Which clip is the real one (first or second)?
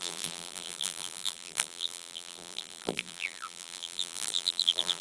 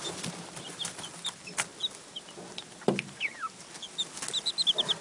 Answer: second